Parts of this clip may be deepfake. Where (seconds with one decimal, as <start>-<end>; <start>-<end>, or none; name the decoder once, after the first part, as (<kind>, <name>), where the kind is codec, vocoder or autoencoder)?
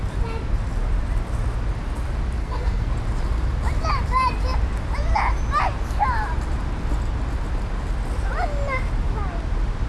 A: 2.4-2.9 (codec, SNAC)